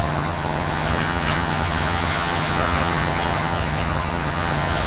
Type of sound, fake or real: fake